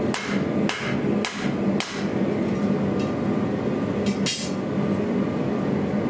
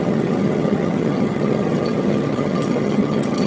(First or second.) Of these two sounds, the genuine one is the first